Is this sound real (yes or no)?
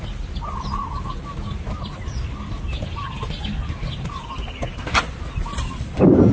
yes